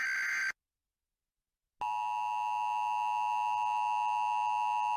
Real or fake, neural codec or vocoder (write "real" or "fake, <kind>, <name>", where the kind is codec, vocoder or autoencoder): real